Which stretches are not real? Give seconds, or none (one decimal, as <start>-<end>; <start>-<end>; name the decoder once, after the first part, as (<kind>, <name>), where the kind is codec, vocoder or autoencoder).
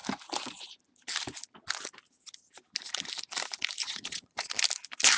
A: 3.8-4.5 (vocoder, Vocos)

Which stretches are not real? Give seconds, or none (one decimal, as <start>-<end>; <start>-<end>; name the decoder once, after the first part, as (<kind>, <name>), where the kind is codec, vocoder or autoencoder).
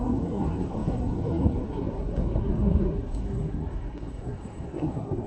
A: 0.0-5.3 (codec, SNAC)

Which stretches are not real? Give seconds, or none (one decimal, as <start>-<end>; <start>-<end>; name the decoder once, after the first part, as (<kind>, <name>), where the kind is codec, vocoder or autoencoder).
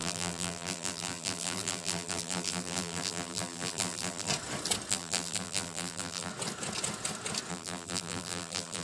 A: 0.0-4.3 (vocoder, BigVGAN v2); 4.9-6.3; 7.5-8.8